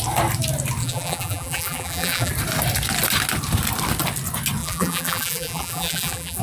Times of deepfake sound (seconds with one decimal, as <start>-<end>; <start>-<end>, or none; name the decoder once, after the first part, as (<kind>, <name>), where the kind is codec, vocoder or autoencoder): 0.8-2.3 (vocoder, BigVGAN v2); 4.6-6.4